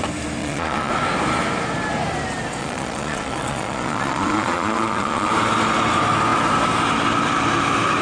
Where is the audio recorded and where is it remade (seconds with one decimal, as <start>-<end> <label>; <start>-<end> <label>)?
0.0-0.4 recorded; 0.4-0.9 remade; 0.9-2.6 recorded; 2.6-5.3 remade; 5.3-8.0 recorded